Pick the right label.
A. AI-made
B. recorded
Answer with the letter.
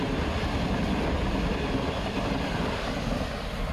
B